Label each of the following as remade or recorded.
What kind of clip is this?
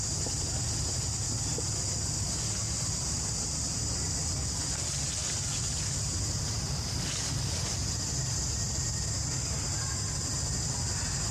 recorded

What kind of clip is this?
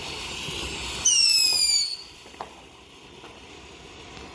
recorded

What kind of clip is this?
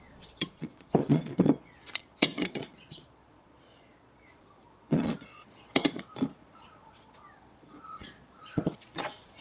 remade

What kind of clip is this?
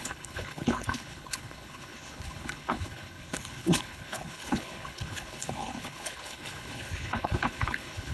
remade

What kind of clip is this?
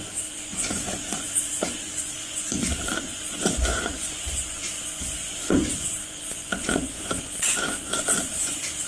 remade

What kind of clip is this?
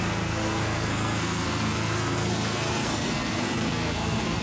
remade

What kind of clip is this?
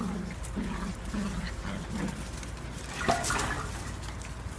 recorded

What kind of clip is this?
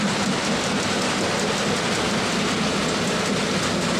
recorded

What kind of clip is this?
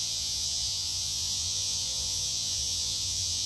remade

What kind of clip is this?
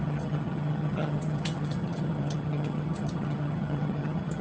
remade